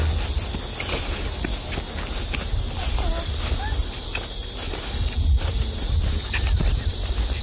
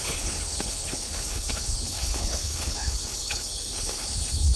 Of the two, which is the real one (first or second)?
first